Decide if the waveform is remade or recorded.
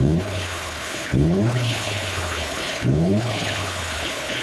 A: remade